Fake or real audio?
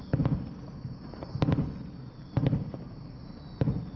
real